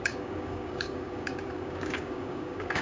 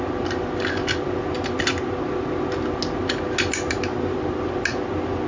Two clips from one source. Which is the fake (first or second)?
first